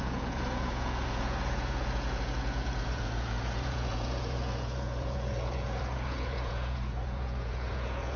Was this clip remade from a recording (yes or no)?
yes